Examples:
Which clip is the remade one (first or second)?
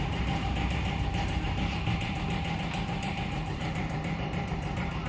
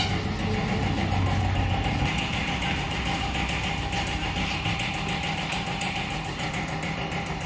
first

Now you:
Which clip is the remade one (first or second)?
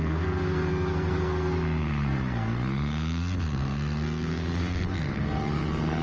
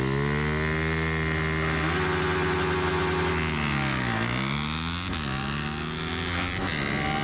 first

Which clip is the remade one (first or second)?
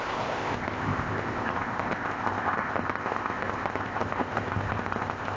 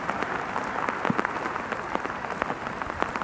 first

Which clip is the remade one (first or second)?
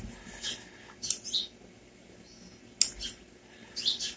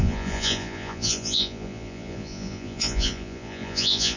second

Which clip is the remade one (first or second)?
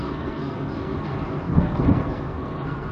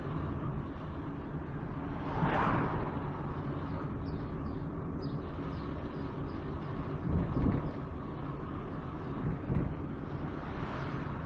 first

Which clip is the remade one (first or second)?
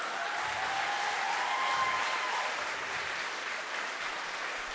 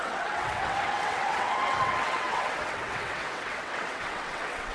second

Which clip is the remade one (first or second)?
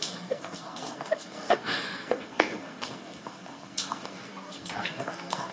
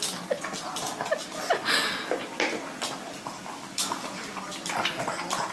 first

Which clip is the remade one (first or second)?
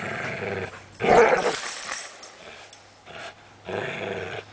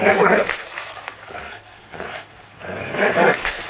second